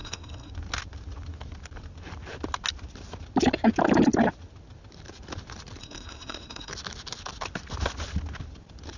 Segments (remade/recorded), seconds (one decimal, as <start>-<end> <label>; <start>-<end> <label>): 0.0-0.5 remade; 0.5-5.8 recorded; 5.8-6.7 remade; 6.7-9.0 recorded

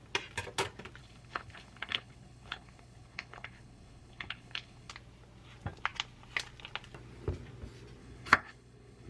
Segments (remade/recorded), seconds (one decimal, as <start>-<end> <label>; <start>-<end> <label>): 0.0-1.0 recorded; 1.0-4.9 remade; 4.9-8.0 recorded; 8.0-9.1 remade

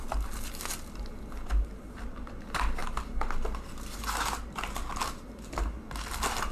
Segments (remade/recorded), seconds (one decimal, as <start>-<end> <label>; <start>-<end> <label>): 0.0-6.5 recorded

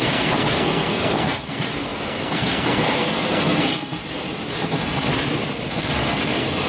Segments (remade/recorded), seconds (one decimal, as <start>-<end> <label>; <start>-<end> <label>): 0.0-4.0 remade; 4.0-4.5 recorded; 4.5-5.1 remade; 5.1-5.7 recorded; 5.7-6.7 remade